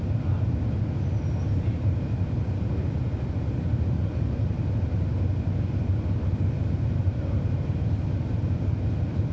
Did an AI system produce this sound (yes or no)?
no